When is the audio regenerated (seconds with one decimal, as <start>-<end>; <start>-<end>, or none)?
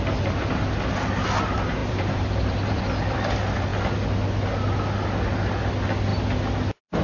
1.8-2.8